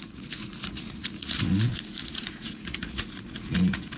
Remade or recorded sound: remade